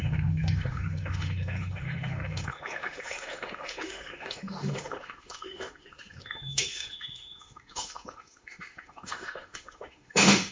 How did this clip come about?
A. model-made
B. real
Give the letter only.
A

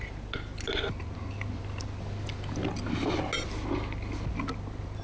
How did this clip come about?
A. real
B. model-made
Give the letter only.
A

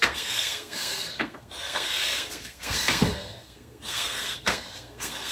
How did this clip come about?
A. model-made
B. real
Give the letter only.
A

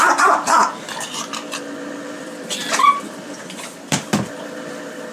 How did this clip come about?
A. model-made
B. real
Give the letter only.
A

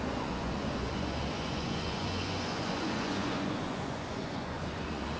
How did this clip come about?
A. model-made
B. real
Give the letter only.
A